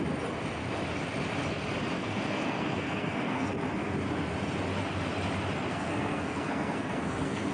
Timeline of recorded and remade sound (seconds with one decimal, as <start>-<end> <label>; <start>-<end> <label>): 0.0-2.0 recorded; 2.0-3.5 remade; 3.5-5.7 recorded; 5.7-7.5 remade